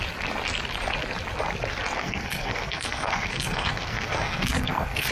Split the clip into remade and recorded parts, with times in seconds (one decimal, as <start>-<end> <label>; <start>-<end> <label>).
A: 0.0-2.0 recorded; 2.0-5.1 remade

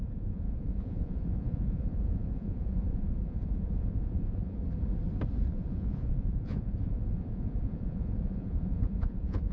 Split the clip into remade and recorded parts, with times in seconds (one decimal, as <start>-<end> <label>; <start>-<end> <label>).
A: 0.0-4.6 remade; 4.6-5.5 recorded; 5.5-9.5 remade

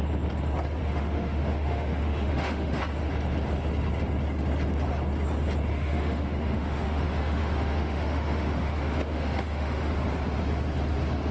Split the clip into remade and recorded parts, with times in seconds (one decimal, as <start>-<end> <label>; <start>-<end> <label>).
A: 0.0-0.8 recorded; 0.8-2.8 remade; 2.8-5.7 recorded; 5.7-9.9 remade; 9.9-11.3 recorded

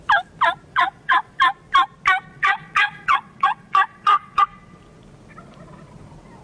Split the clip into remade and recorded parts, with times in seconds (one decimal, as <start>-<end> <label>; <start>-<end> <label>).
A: 0.0-0.7 recorded; 0.7-1.4 remade; 1.4-2.3 recorded; 2.3-4.4 remade; 4.4-6.4 recorded

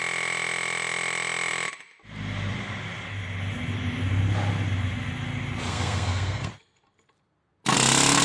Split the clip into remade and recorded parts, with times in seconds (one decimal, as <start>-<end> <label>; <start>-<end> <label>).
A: 0.0-5.7 recorded; 5.7-6.5 remade; 6.5-8.2 recorded

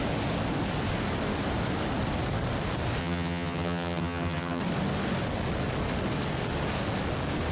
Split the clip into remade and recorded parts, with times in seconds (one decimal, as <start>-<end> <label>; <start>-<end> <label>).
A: 0.0-3.0 recorded; 3.0-4.6 remade; 4.6-7.5 recorded